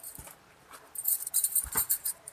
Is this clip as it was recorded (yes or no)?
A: no